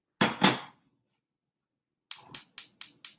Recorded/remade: recorded